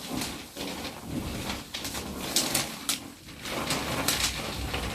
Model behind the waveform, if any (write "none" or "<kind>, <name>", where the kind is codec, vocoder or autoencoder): none